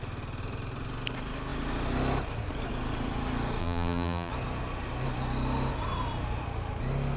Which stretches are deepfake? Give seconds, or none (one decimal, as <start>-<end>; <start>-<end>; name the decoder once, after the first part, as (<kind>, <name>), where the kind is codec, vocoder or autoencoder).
3.6-4.3 (vocoder, BigVGAN v2)